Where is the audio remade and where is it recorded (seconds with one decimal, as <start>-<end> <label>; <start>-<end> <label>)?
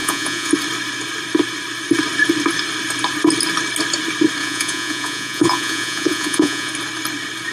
0.0-0.5 remade; 0.5-4.4 recorded; 4.4-6.7 remade; 6.7-7.5 recorded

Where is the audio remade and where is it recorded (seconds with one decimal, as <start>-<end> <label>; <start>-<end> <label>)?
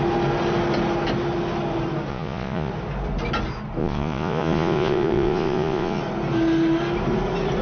0.0-2.1 recorded; 2.1-2.7 remade; 2.7-3.8 recorded; 3.8-6.0 remade; 6.0-7.6 recorded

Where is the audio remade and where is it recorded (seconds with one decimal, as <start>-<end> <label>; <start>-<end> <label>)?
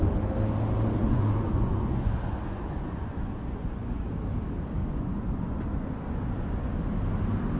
0.0-1.0 recorded; 1.0-4.0 remade; 4.0-4.8 recorded; 4.8-6.7 remade; 6.7-7.6 recorded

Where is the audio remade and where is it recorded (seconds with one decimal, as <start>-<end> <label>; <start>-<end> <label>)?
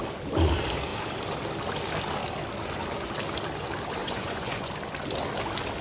0.0-4.0 recorded; 4.0-4.7 remade; 4.7-5.8 recorded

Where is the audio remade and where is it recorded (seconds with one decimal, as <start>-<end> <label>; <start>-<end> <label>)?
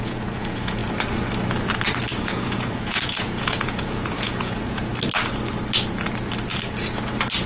0.0-0.8 remade; 0.8-2.1 recorded; 2.1-4.9 remade; 4.9-7.5 recorded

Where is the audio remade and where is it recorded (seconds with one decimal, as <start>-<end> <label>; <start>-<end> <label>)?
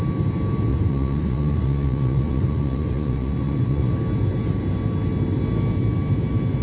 0.0-0.7 recorded; 0.7-3.9 remade; 3.9-6.6 recorded